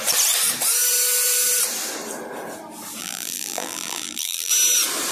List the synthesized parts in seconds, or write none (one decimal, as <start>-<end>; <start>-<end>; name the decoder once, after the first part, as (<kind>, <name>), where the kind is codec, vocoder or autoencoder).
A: 3.0-4.5 (vocoder, BigVGAN v2)